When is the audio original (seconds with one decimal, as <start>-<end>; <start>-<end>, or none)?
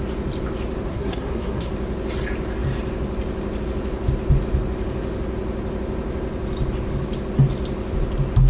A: 0.0-0.9; 1.7-8.5